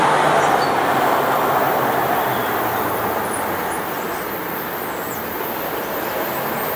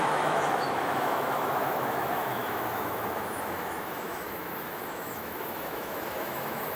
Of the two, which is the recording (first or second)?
first